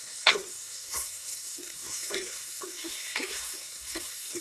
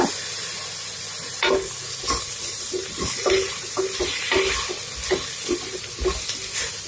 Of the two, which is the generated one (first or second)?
first